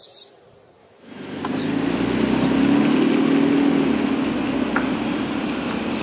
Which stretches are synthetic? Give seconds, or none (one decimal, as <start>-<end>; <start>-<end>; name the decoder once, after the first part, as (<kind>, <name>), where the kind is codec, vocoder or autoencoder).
0.8-1.4 (autoencoder, DAC-VAE)